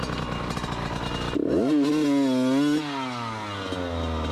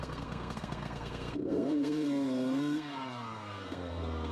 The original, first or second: first